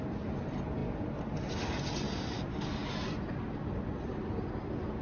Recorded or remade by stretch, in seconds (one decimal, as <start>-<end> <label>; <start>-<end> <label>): 0.0-5.0 recorded